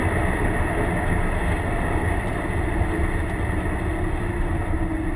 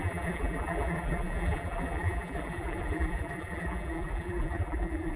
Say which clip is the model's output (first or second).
second